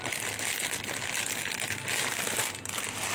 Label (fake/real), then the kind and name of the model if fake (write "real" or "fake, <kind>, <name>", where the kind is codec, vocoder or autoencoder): real